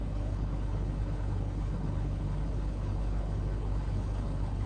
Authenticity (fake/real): fake